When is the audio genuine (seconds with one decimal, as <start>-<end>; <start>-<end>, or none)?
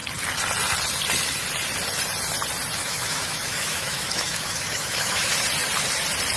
0.0-2.8; 5.3-6.4